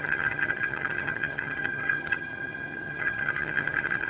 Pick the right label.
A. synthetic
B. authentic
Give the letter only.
A